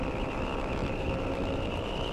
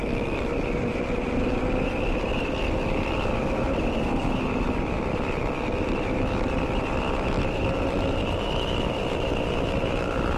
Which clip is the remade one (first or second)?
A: second